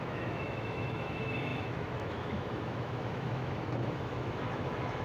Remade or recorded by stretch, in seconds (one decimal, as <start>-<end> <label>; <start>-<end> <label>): 0.0-5.0 remade